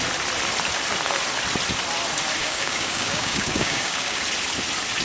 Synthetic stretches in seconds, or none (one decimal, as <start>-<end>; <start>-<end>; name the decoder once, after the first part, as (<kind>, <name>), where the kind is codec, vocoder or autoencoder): 2.4-4.2 (codec, DAC)